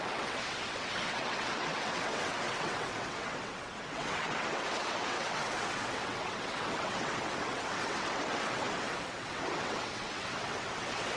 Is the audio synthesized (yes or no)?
yes